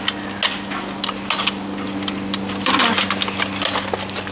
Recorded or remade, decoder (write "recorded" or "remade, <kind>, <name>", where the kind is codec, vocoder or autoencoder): recorded